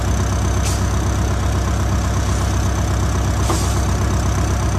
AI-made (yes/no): no